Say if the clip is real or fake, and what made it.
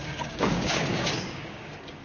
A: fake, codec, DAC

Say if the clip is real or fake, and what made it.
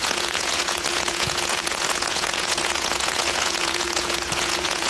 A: fake, vocoder, Vocos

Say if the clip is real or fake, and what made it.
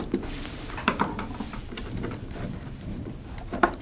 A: fake, vocoder, BigVGAN v2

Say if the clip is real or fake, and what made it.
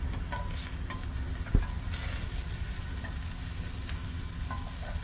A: real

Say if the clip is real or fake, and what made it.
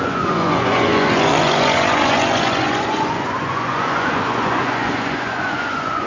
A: fake, vocoder, Vocos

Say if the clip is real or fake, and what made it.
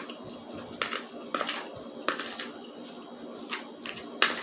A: real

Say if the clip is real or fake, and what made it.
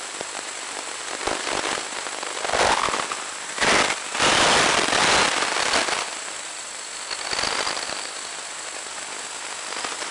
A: real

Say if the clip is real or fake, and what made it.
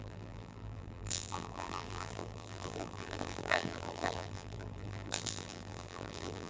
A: fake, vocoder, BigVGAN v2